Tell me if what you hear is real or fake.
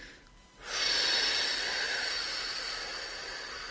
real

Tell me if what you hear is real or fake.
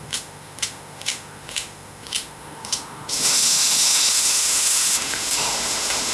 fake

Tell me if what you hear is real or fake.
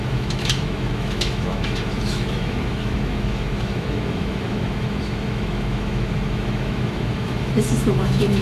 fake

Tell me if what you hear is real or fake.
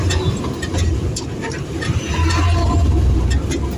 real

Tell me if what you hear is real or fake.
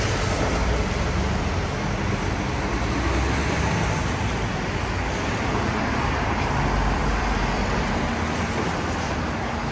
real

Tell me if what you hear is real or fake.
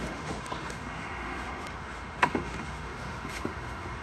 fake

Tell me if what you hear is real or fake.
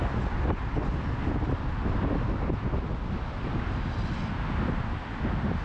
real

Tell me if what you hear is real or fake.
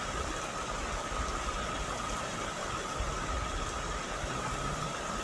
real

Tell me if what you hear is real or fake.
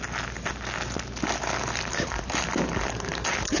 real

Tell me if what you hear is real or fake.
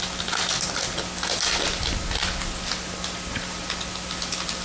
real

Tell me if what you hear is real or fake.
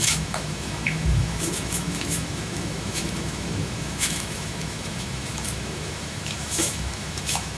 fake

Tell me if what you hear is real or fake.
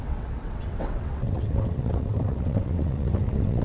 fake